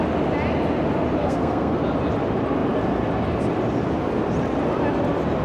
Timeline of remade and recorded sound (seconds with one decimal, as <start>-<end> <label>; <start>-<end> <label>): 0.0-1.2 recorded; 1.2-1.8 remade; 1.8-5.4 recorded